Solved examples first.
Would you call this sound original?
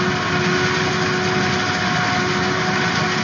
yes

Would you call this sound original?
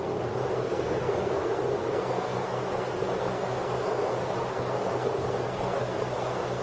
no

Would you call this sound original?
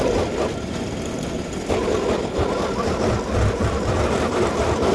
yes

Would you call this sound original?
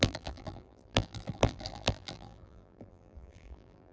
no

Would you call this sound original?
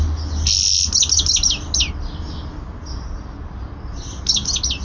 yes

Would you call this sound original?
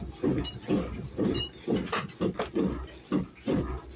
yes